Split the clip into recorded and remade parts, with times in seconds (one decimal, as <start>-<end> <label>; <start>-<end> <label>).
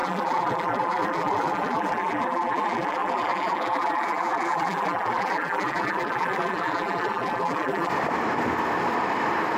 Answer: 0.0-7.9 remade; 7.9-9.6 recorded